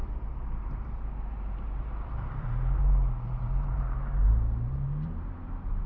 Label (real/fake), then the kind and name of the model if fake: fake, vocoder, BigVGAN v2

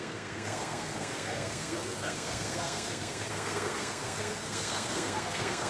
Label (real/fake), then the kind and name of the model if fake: fake, codec, SNAC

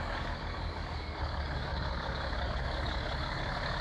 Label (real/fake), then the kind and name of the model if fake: fake, codec, DAC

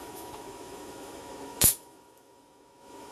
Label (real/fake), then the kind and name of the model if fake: fake, autoencoder, DAC-VAE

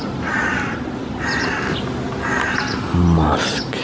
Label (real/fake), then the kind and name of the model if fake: real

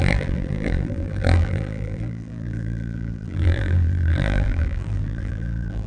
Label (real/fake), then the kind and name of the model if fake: fake, vocoder, BigVGAN v2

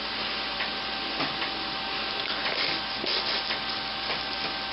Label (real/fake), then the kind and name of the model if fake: real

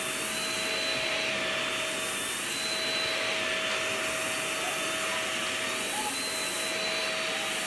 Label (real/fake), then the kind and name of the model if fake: real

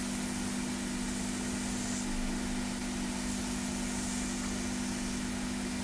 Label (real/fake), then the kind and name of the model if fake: real